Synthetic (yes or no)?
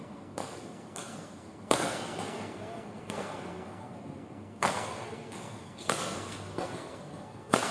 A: yes